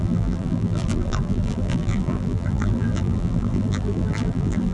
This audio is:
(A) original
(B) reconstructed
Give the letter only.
B